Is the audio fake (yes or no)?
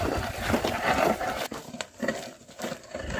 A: no